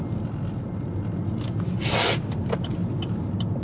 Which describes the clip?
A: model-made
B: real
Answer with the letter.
B